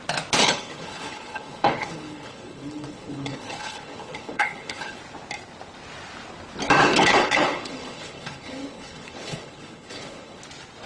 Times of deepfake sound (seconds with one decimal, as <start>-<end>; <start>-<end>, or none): 0.4-5.0; 6.8-10.4